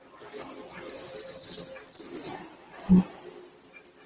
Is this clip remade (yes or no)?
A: no